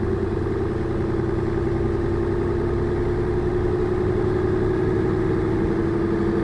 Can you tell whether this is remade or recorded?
recorded